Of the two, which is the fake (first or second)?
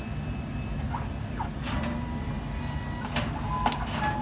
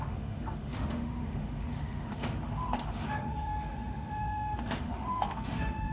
second